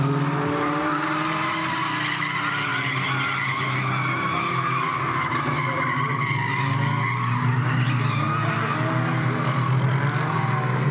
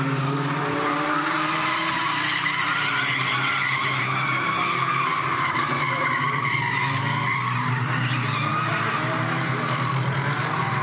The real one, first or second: first